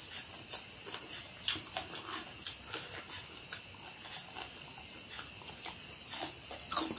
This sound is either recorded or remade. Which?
recorded